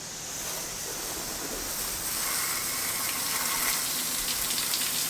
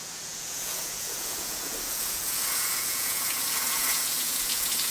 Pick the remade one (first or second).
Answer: second